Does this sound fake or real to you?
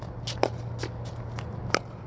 real